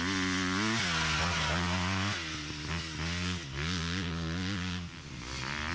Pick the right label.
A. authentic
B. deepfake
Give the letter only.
A